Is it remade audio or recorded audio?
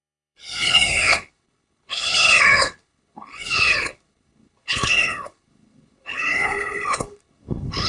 remade